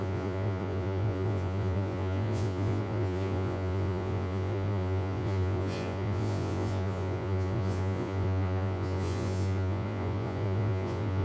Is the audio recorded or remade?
remade